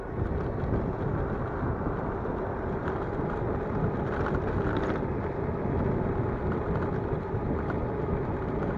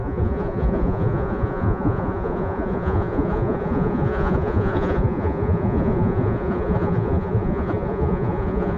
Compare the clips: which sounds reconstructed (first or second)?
second